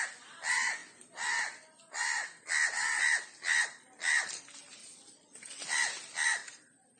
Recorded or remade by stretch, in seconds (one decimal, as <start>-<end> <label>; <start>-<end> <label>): 0.0-4.8 recorded; 4.8-5.6 remade; 5.6-7.0 recorded